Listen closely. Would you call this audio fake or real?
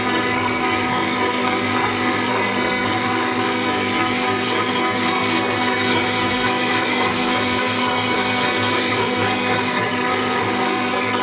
fake